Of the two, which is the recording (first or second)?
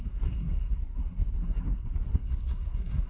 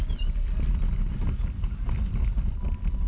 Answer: second